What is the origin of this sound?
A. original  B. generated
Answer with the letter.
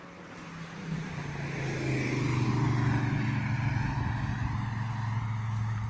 A